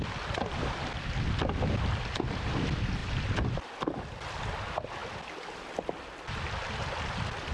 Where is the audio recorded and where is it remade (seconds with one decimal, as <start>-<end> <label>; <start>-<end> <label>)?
0.0-7.5 recorded